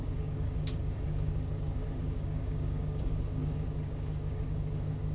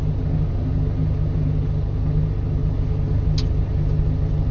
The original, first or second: second